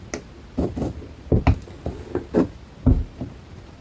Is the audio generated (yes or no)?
no